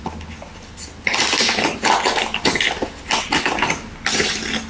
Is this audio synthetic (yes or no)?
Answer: no